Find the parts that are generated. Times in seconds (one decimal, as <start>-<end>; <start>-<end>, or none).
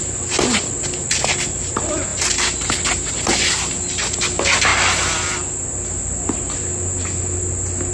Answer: none